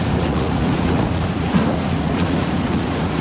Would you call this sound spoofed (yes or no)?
yes